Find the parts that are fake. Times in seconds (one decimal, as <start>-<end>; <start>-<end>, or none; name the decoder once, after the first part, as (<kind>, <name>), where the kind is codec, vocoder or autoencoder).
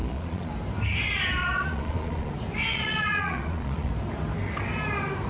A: 0.0-0.5 (vocoder, Vocos); 1.4-2.3; 2.7-3.9